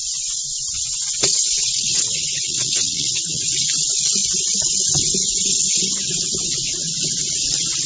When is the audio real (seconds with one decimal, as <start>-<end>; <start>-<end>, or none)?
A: 3.5-7.9

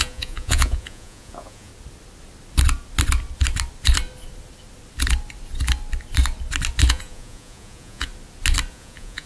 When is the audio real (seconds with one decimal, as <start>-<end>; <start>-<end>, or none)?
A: 1.7-6.9; 8.1-8.7

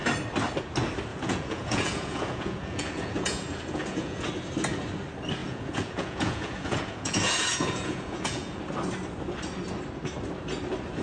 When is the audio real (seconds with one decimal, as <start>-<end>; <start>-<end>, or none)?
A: 0.0-1.1; 4.3-5.4; 8.6-11.0

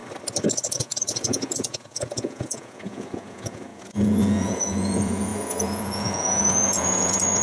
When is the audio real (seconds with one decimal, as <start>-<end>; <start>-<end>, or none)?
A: 0.0-0.7

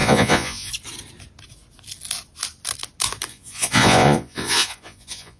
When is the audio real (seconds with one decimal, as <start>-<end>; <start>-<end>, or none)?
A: 0.7-3.3

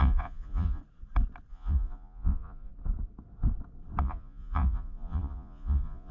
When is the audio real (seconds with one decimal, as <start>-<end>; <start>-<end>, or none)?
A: 0.8-1.5; 2.7-4.0

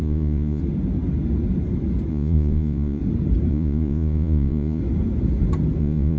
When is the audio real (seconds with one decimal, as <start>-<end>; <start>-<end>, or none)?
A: 0.6-2.1; 3.0-3.5; 4.8-5.8

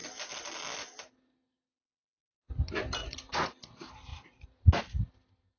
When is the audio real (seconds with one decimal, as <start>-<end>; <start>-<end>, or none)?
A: 0.0-3.0; 3.5-4.1; 4.8-5.6